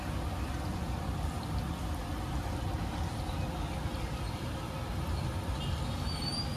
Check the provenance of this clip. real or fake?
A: real